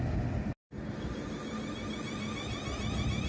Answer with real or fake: real